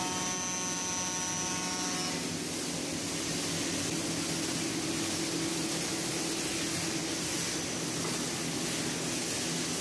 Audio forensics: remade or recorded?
recorded